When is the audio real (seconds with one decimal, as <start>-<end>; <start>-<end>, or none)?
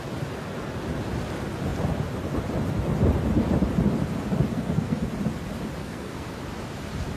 0.0-4.5; 5.1-5.8; 6.3-7.2